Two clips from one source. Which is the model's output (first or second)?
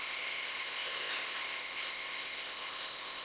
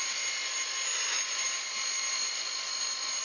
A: first